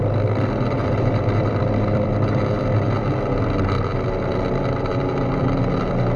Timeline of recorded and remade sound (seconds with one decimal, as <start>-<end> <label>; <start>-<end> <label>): 0.0-0.8 recorded; 0.8-3.1 remade; 3.1-4.9 recorded; 4.9-5.8 remade; 5.8-6.2 recorded